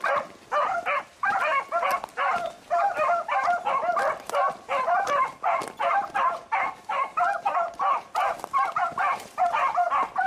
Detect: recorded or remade recorded